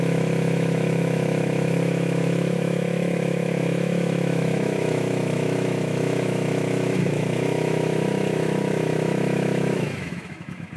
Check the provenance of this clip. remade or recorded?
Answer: remade